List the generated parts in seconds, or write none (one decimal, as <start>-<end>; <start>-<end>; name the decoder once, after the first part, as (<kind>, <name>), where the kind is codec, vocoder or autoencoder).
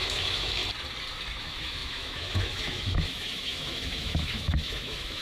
0.0-0.6 (autoencoder, DAC-VAE); 1.4-5.2